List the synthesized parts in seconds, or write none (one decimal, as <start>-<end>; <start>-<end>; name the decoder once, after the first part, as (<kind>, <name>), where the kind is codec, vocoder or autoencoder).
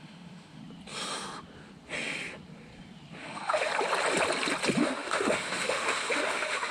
0.0-0.6 (autoencoder, DAC-VAE); 3.2-3.7; 4.8-6.7